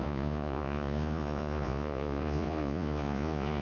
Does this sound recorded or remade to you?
remade